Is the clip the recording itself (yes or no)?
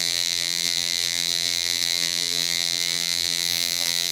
no